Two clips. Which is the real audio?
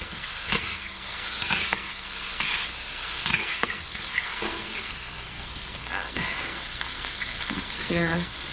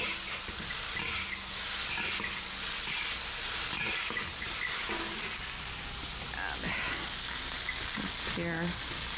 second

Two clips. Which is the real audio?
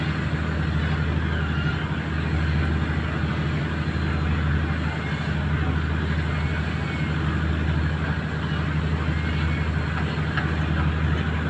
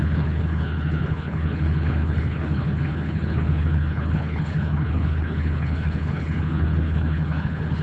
first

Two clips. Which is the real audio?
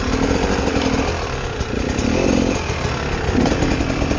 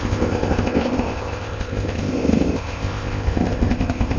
first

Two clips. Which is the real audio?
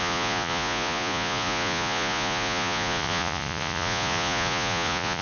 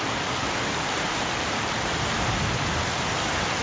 second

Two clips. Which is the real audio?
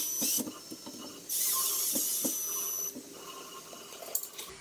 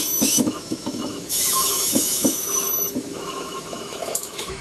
first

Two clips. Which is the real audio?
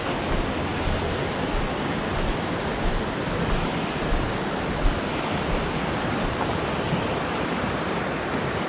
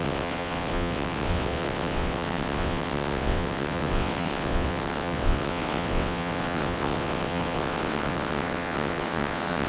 first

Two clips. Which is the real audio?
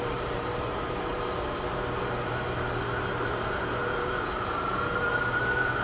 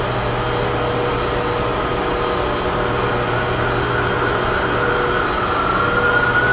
second